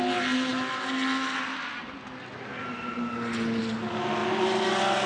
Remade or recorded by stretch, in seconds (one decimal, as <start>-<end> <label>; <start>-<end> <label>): 0.0-5.1 recorded